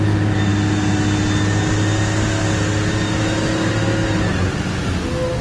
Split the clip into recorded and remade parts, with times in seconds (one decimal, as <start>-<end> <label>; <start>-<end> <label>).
0.0-5.4 recorded